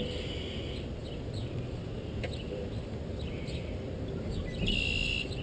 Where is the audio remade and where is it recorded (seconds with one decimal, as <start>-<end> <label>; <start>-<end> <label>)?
0.0-5.4 recorded